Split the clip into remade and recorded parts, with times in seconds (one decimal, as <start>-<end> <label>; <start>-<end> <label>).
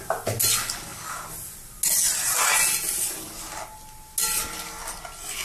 0.0-5.4 recorded